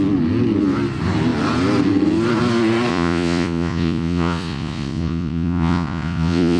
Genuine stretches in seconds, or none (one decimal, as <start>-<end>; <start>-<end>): 0.0-2.9